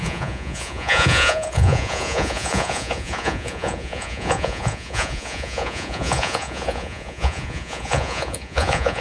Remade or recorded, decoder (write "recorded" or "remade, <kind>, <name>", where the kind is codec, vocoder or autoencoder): remade, vocoder, Vocos